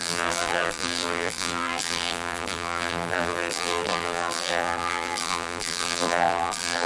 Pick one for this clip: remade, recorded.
remade